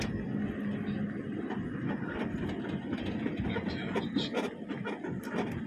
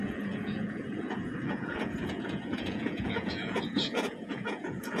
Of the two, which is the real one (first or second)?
first